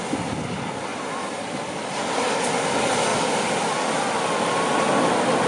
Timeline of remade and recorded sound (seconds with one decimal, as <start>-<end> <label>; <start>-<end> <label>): 0.0-5.5 recorded